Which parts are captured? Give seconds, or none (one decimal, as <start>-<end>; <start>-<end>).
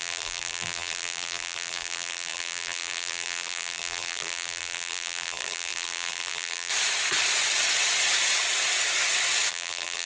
6.7-9.5